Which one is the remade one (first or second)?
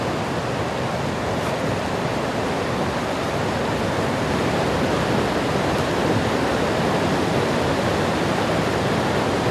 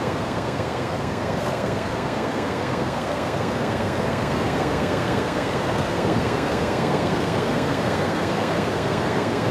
second